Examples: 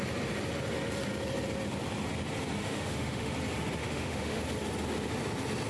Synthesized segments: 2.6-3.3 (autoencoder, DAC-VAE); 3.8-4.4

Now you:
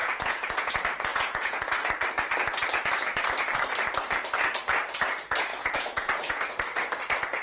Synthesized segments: 0.0-0.7 (vocoder, Vocos); 1.1-1.6; 5.5-6.4